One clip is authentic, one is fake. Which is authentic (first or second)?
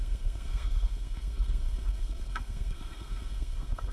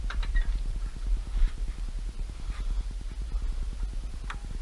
second